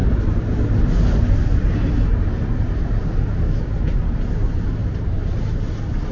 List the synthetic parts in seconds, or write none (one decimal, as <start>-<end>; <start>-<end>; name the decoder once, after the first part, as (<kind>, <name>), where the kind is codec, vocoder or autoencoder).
4.8-5.4 (vocoder, BigVGAN v2)